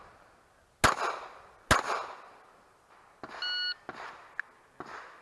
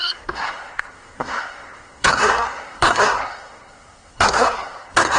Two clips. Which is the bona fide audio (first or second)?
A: first